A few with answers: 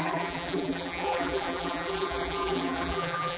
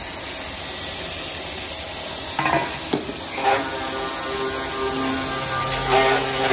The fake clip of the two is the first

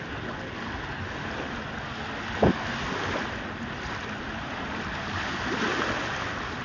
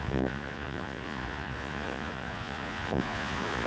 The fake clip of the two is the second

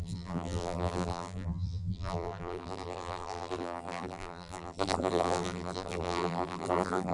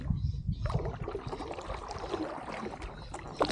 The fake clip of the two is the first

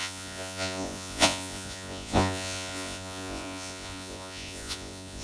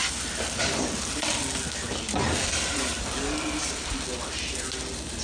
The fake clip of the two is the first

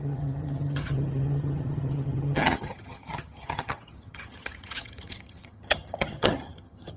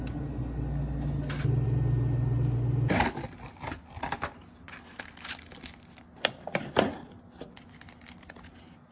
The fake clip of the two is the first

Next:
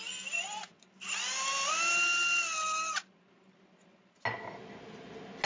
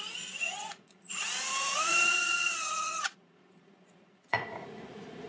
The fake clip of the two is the second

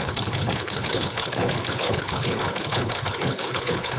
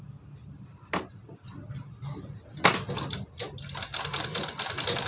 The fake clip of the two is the first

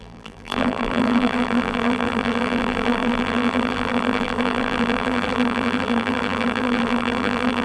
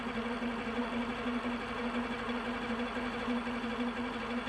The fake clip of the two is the first